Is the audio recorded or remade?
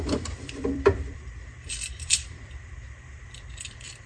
remade